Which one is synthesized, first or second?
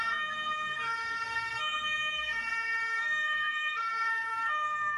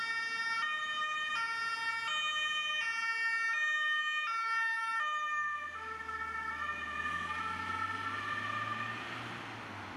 first